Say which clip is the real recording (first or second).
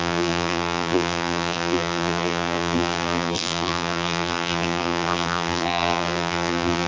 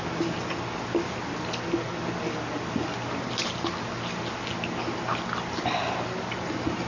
second